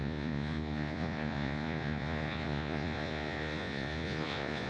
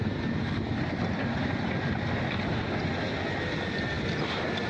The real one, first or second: second